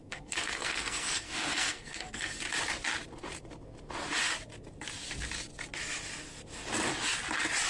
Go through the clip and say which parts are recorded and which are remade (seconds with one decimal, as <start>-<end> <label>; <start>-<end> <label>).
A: 0.0-2.4 remade; 2.4-7.7 recorded